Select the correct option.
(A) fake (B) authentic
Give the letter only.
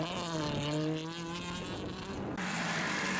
B